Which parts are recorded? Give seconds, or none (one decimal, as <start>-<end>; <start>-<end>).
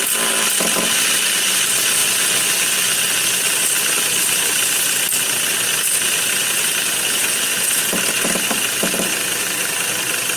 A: 0.0-7.2; 7.8-10.4